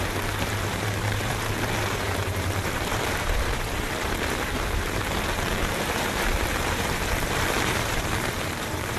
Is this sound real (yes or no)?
no